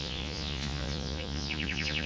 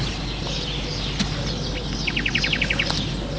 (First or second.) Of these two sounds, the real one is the second